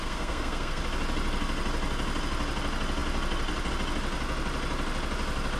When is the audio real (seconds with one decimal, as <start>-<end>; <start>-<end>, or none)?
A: 0.8-5.6